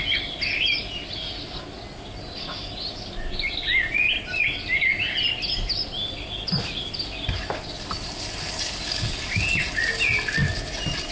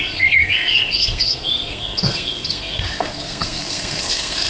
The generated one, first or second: second